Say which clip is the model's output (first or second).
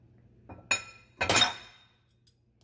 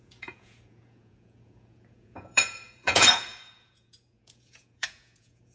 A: second